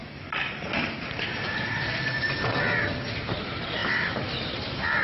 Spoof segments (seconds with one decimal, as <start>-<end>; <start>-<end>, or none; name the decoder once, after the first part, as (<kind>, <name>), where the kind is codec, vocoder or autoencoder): 3.0-3.8 (vocoder, BigVGAN v2); 4.5-5.0